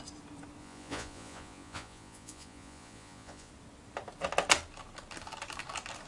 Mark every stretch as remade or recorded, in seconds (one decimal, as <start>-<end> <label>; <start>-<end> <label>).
0.0-0.6 recorded; 0.6-3.5 remade; 3.5-6.1 recorded